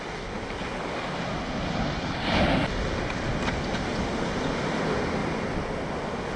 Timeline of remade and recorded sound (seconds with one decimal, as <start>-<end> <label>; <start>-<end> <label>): 0.0-6.4 recorded